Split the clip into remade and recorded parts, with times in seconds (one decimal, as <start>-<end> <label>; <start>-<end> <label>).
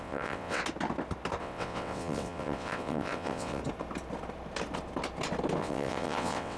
0.0-0.6 remade; 0.6-1.4 recorded; 1.4-3.6 remade; 3.6-5.6 recorded; 5.6-6.6 remade